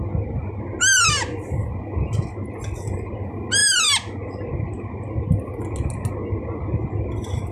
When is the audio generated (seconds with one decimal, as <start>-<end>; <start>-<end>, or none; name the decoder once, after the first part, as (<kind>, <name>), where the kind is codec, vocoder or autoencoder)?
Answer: none